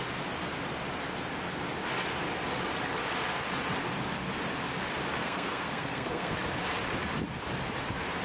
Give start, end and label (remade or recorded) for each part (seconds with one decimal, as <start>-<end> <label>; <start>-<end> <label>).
0.0-5.2 recorded; 5.2-6.3 remade; 6.3-8.2 recorded